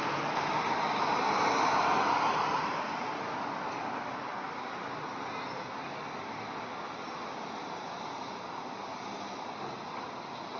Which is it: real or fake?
real